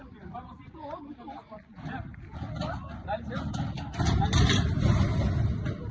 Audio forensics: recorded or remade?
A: recorded